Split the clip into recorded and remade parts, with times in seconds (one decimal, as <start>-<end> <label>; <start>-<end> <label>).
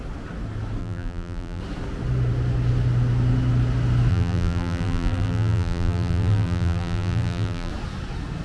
0.0-0.8 recorded; 0.8-1.6 remade; 1.6-4.1 recorded; 4.1-7.7 remade; 7.7-8.4 recorded